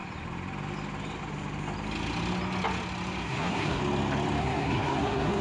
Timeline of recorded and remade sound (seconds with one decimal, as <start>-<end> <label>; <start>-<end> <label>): 0.0-3.2 recorded; 3.2-3.8 remade; 3.8-4.4 recorded; 4.4-5.4 remade